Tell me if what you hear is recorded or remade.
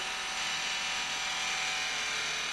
recorded